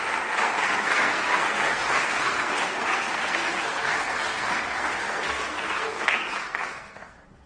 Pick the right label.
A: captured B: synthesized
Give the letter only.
B